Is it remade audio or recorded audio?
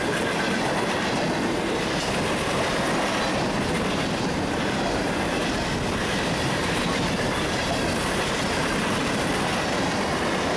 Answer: remade